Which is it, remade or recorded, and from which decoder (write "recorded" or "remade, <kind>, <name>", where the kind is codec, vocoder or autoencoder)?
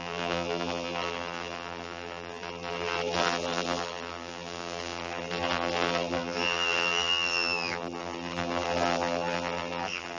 remade, vocoder, BigVGAN v2